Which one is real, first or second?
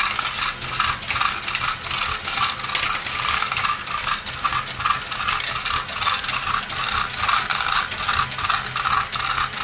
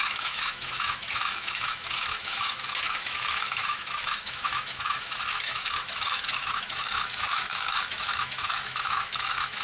first